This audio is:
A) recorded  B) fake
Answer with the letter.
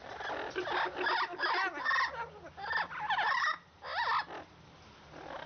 A